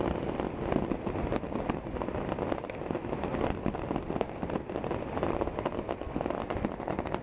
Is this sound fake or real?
real